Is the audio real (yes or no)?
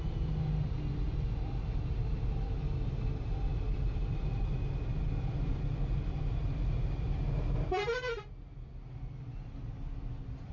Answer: yes